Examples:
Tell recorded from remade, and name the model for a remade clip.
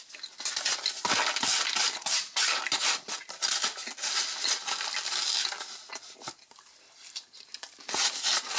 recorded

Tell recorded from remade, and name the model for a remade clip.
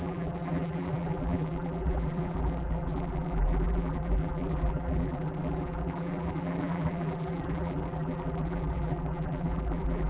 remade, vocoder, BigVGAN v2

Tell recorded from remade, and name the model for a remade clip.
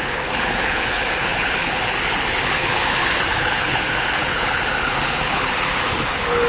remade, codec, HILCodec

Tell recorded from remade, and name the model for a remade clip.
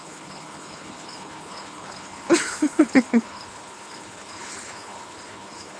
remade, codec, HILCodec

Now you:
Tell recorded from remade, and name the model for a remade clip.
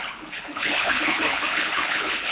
remade, codec, HILCodec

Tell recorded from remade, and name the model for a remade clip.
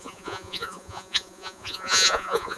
remade, vocoder, Vocos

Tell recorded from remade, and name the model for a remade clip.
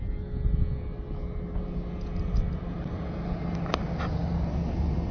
recorded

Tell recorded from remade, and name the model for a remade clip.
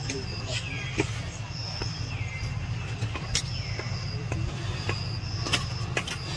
recorded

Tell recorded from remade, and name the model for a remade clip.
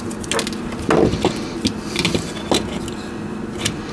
recorded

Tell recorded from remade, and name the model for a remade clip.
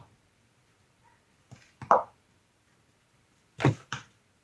remade, vocoder, BigVGAN v2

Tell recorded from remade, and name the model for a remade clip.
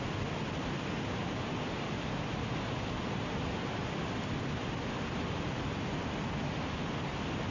recorded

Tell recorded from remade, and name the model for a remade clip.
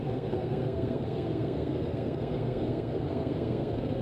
remade, codec, SNAC